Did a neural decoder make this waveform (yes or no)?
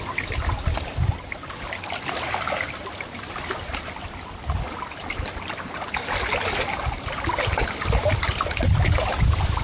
no